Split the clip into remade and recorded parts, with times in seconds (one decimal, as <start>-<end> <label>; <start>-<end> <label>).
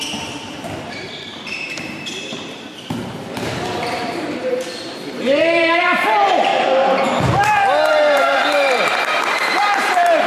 0.0-6.5 remade; 6.5-7.9 recorded; 7.9-10.3 remade